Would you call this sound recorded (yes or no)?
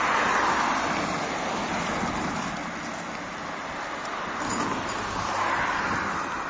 yes